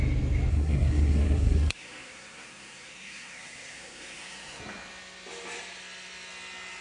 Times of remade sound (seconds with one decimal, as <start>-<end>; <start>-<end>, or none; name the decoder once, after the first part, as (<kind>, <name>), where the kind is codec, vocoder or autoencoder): 0.5-4.6 (codec, SNAC)